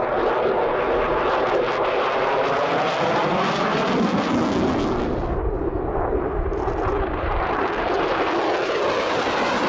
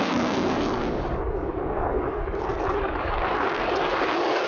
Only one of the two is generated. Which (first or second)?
second